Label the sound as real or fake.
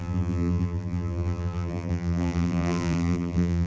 fake